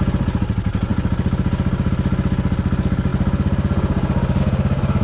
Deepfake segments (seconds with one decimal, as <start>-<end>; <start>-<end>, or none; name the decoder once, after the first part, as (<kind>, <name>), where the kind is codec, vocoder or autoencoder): none